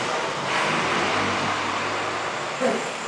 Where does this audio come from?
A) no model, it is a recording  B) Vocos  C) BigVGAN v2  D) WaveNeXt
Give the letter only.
A